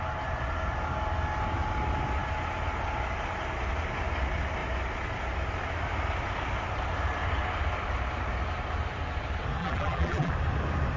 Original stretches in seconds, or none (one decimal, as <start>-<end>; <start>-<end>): 0.0-9.6; 10.3-11.0